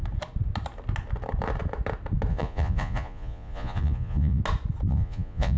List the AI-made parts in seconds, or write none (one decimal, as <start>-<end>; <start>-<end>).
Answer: 2.3-4.4; 4.9-5.6